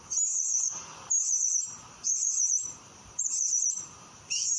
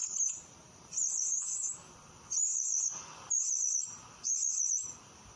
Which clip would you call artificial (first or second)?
first